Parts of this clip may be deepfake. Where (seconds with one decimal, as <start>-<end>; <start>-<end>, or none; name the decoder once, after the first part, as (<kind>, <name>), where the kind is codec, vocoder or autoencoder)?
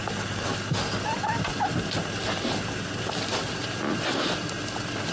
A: none